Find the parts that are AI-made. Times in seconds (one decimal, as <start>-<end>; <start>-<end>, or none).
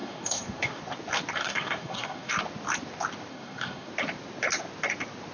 0.0-0.8; 1.4-2.3; 3.3-3.9